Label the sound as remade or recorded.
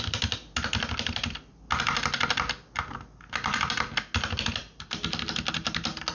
recorded